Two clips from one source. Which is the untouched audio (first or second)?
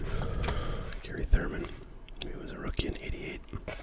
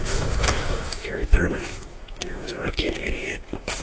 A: first